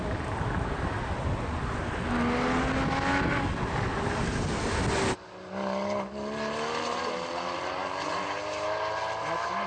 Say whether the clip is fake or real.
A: real